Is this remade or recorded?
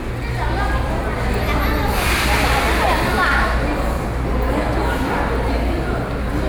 recorded